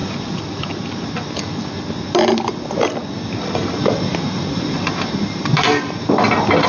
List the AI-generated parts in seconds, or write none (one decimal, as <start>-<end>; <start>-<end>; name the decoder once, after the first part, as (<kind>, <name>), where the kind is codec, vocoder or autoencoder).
3.2-6.0 (vocoder, BigVGAN v2)